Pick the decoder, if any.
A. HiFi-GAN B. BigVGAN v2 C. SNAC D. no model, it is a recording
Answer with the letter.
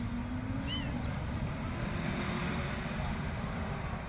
D